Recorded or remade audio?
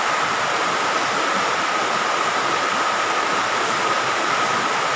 recorded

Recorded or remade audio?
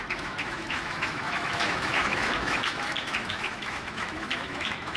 remade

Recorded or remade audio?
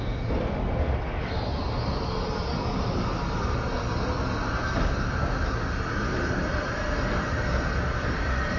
recorded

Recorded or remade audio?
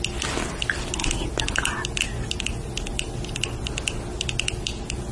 recorded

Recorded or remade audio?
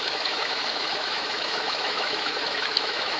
remade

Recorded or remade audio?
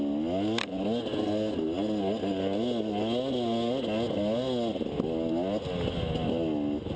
recorded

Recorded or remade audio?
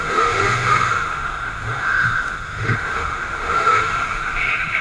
remade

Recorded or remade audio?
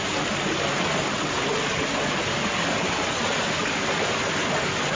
recorded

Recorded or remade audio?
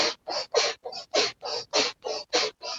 recorded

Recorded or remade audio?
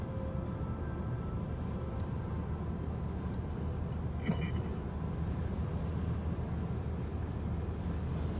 recorded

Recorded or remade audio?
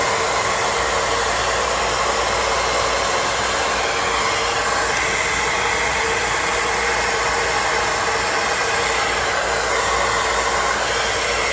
recorded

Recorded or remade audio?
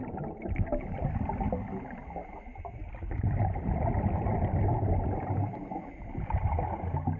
recorded